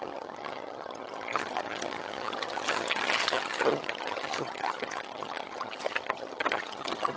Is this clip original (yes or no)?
no